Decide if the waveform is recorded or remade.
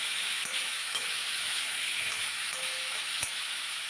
remade